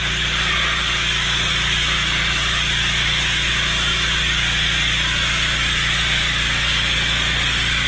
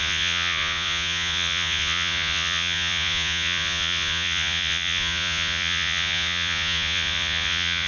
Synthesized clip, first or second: second